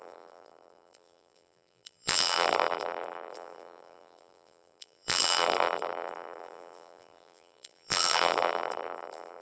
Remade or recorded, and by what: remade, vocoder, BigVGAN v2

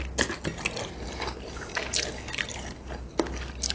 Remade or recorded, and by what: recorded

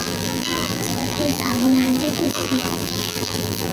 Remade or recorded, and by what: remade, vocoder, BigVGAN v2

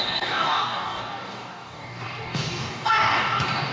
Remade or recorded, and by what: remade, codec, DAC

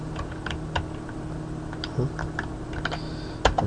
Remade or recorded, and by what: recorded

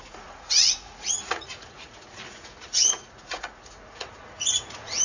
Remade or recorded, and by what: remade, vocoder, Vocos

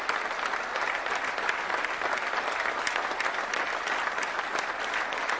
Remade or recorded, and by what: remade, vocoder, BigVGAN v2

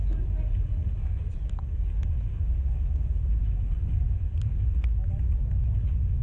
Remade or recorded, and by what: recorded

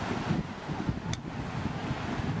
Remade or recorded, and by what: recorded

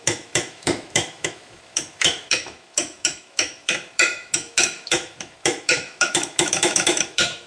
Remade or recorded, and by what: remade, autoencoder, DAC-VAE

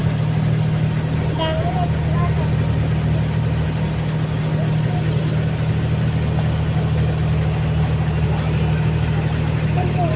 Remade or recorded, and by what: recorded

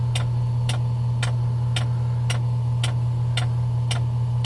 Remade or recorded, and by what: recorded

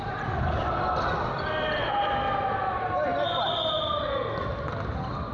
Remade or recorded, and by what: recorded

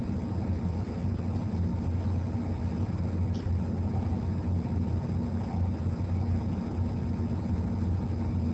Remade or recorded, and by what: recorded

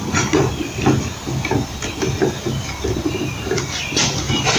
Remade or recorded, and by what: recorded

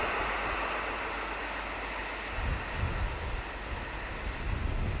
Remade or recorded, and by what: recorded